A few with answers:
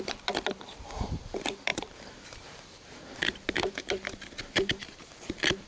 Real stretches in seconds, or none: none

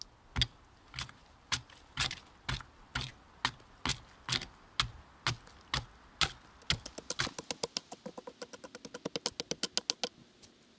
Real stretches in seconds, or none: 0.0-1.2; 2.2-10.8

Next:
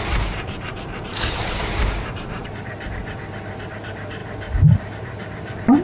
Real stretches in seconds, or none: 3.0-3.8